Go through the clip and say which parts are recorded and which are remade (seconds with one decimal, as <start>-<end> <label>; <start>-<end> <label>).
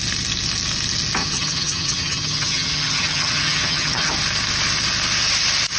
0.0-1.2 recorded; 1.2-4.1 remade; 4.1-5.8 recorded